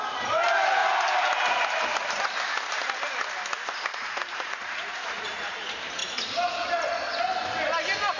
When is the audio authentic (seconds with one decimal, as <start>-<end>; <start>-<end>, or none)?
0.0-3.9; 5.3-8.2